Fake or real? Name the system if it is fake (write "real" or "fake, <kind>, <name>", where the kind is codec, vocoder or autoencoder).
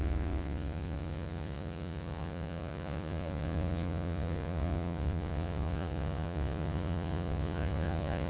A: fake, vocoder, Vocos